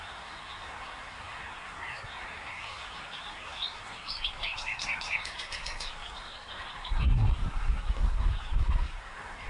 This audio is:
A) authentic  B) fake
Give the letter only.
B